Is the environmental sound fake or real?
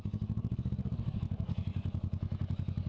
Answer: fake